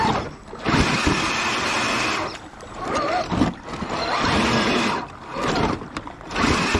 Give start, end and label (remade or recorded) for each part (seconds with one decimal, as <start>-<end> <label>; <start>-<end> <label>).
0.0-6.8 recorded